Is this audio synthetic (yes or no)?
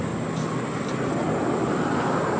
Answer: no